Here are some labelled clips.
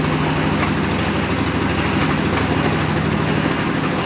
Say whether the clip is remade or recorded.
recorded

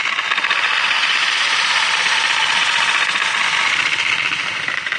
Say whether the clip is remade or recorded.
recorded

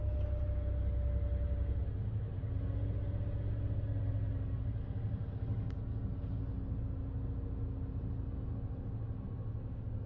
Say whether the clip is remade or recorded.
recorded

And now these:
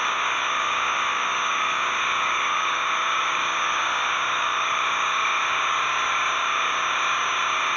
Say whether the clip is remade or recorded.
remade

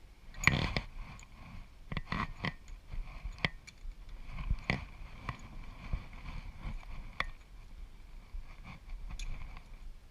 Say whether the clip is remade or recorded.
recorded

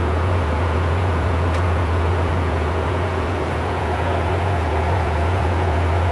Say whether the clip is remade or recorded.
remade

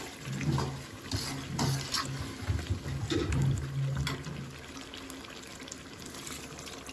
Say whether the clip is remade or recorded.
recorded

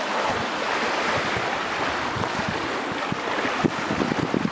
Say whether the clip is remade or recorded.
recorded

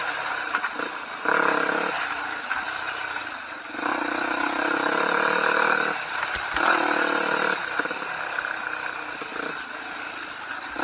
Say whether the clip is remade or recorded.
recorded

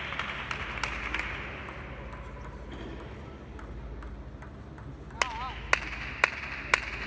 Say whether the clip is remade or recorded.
recorded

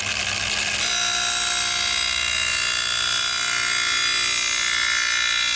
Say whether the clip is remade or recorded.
recorded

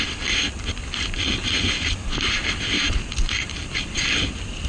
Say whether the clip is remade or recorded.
recorded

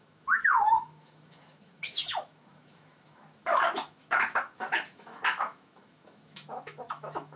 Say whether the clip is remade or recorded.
remade